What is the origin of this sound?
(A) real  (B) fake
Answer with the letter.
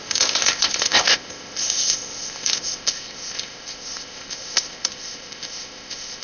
B